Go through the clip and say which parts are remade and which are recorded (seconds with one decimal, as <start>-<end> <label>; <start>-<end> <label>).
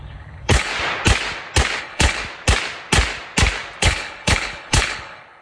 0.0-0.7 remade; 0.7-1.8 recorded; 1.8-2.2 remade; 2.2-3.8 recorded; 3.8-5.4 remade